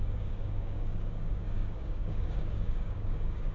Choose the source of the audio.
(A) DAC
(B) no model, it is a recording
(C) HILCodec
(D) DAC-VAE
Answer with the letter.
A